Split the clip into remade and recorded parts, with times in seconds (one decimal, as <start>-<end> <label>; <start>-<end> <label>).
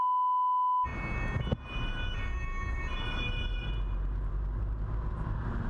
0.0-5.7 recorded